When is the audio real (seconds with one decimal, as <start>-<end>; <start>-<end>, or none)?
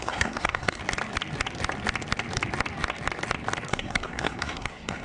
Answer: 0.8-3.7